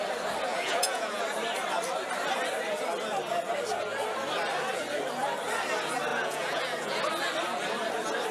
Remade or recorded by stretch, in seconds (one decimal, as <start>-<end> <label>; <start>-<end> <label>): 0.0-0.5 recorded; 0.5-1.2 remade; 1.2-6.1 recorded; 6.1-7.0 remade; 7.0-8.3 recorded

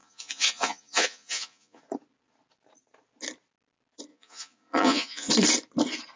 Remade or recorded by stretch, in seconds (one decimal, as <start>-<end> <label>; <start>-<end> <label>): 0.0-1.8 remade; 1.8-4.1 recorded; 4.1-5.3 remade; 5.3-6.2 recorded

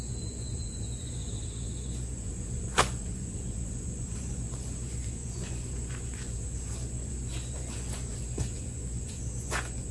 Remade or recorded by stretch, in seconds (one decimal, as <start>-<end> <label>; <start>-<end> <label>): 0.0-9.9 remade

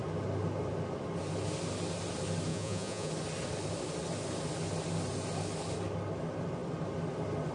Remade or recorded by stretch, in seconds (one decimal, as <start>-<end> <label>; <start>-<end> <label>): 0.0-2.5 recorded; 2.5-3.1 remade; 3.1-7.5 recorded

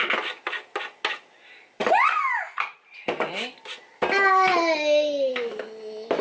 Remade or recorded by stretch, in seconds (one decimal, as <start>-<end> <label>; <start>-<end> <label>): 0.0-6.2 recorded